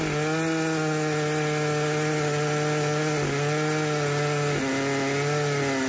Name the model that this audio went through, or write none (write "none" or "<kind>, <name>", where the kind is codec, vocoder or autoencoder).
none